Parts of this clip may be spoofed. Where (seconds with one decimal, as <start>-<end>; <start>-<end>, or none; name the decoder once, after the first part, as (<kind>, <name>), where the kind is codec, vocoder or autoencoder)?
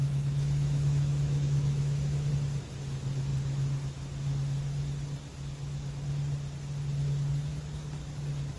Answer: 0.0-2.3 (autoencoder, DAC-VAE)